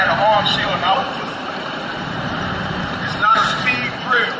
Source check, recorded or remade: remade